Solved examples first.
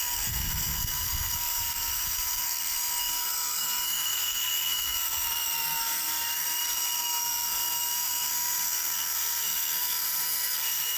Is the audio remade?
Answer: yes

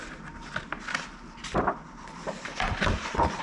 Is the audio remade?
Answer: no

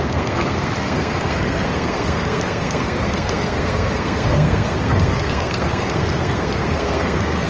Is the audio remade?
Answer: yes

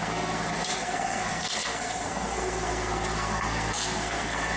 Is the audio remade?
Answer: yes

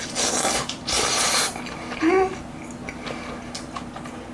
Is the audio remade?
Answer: no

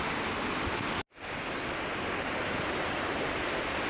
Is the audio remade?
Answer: no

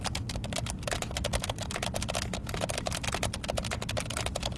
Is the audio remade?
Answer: no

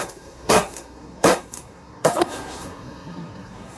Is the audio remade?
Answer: yes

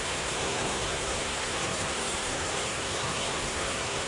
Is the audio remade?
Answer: yes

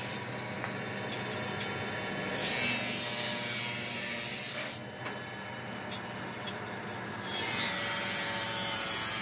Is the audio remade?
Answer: no